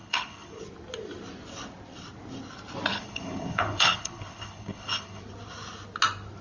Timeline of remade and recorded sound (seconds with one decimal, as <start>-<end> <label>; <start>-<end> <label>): 0.0-0.6 remade; 0.6-2.9 recorded; 2.9-5.2 remade; 5.2-6.4 recorded